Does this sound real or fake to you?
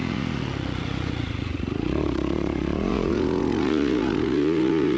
fake